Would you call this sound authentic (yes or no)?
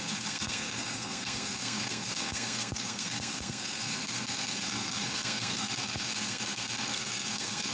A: no